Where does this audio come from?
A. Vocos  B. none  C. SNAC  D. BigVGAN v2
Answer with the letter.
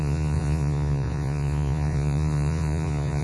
A